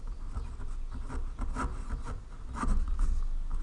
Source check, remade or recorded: recorded